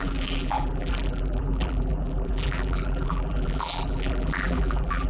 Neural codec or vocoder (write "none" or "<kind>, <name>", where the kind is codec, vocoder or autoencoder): vocoder, BigVGAN v2